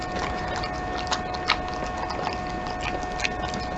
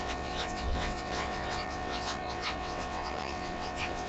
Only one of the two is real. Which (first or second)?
first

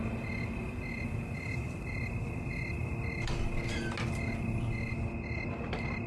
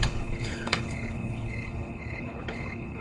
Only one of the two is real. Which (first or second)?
first